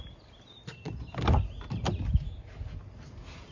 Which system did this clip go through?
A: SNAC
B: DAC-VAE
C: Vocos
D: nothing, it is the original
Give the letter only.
D